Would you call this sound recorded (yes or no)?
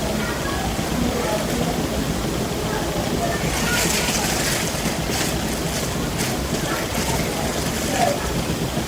yes